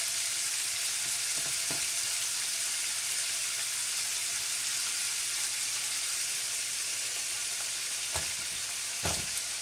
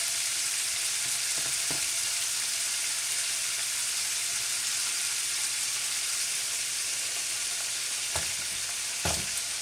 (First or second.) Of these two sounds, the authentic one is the first